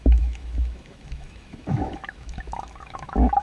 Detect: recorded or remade remade